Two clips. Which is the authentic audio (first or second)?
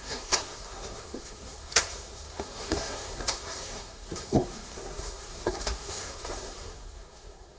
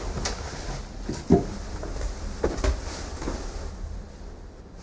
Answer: second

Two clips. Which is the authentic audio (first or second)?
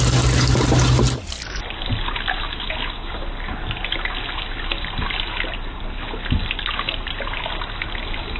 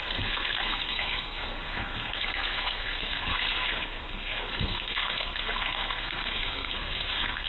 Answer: first